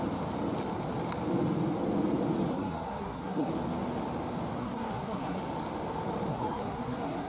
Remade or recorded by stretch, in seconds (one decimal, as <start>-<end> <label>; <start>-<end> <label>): 0.0-2.5 recorded; 2.5-3.5 remade; 3.5-4.6 recorded; 4.6-5.4 remade; 5.4-6.3 recorded; 6.3-7.3 remade